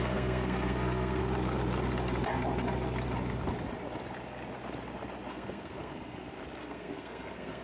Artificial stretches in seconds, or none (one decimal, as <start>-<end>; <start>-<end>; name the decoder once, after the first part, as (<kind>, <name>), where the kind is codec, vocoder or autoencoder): 0.0-1.2 (codec, SNAC); 5.3-5.9; 6.6-7.6